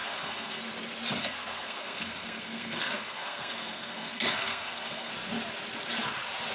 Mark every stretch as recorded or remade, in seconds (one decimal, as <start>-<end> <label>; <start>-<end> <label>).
0.0-0.6 remade; 0.6-1.2 recorded; 1.2-5.1 remade; 5.1-6.5 recorded